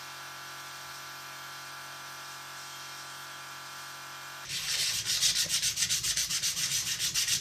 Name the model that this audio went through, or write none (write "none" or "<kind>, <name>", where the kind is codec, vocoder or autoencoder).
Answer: none